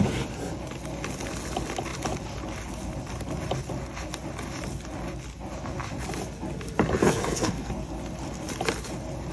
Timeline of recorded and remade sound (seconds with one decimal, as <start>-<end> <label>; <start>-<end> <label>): 0.0-7.0 recorded; 7.0-7.7 remade; 7.7-9.3 recorded